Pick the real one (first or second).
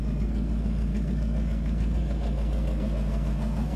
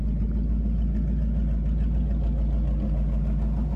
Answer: second